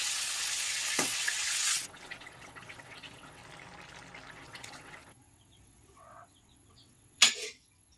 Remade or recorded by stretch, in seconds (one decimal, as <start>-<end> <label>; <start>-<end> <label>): 0.0-3.4 remade; 3.4-4.3 recorded; 4.3-8.0 remade